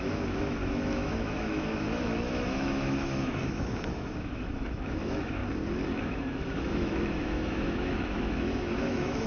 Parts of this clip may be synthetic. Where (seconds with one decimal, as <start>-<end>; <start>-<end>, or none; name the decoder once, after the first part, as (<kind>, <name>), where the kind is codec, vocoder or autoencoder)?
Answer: 0.0-5.4 (autoencoder, DAC-VAE); 6.0-9.3